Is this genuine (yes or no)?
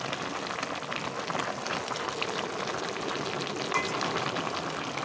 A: yes